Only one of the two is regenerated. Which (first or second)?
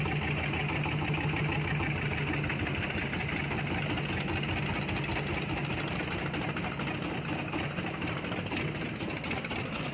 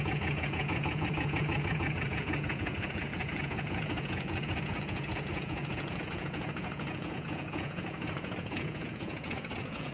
second